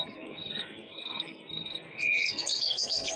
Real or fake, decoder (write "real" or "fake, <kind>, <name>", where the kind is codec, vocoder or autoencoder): fake, codec, SNAC